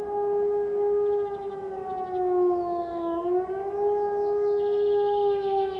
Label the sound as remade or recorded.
remade